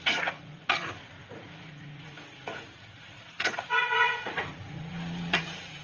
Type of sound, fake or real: fake